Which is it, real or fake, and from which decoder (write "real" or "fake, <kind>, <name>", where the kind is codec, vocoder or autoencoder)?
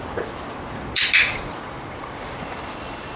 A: real